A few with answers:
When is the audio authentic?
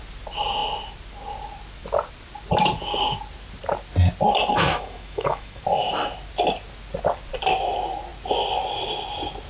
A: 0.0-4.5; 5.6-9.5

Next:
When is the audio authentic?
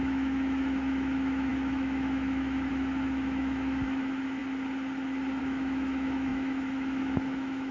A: 4.4-5.4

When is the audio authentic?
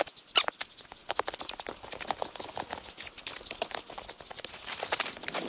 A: 0.0-5.5